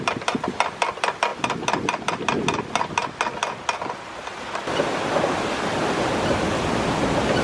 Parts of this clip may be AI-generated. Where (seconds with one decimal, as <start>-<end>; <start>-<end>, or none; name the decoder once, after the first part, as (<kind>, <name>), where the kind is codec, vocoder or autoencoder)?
none